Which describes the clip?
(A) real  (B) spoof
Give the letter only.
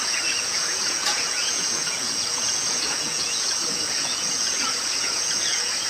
B